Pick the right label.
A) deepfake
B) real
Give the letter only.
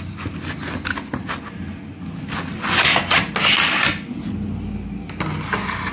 B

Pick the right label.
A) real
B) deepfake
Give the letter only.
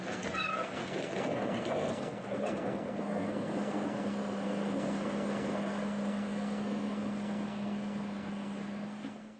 B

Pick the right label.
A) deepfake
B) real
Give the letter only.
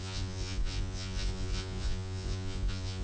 A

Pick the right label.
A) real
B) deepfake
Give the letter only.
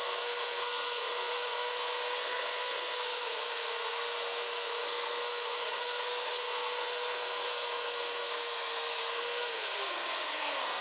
B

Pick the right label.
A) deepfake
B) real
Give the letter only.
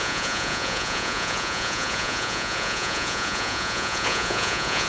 A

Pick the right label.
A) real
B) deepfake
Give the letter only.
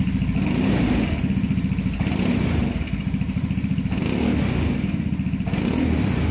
A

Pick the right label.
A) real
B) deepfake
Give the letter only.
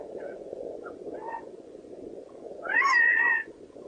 B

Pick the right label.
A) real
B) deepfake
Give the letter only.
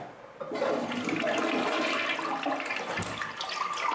A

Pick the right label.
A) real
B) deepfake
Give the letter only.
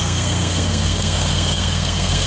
B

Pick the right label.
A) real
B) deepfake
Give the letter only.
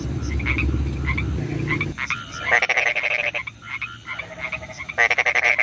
A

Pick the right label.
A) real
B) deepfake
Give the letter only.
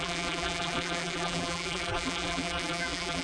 B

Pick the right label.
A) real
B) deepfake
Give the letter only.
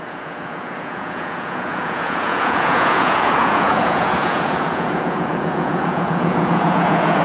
B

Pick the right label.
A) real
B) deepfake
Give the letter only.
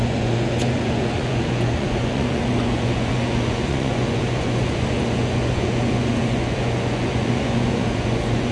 B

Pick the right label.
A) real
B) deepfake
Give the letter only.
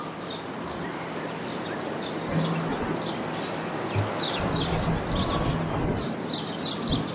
A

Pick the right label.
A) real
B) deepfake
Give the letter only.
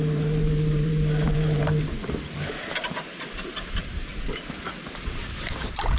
B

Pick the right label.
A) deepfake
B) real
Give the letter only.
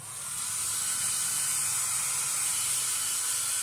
B